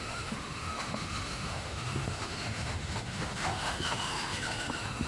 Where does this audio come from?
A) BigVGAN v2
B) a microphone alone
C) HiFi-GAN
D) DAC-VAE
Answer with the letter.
D